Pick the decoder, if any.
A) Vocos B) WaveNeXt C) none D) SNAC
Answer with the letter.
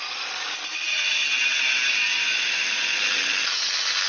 C